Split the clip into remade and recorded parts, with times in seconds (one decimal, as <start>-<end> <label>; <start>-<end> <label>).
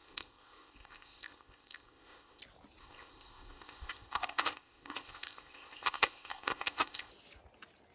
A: 0.0-2.4 remade; 2.4-2.8 recorded; 2.8-7.1 remade; 7.1-7.9 recorded